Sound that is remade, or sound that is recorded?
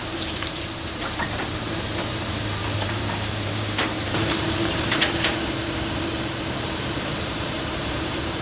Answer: remade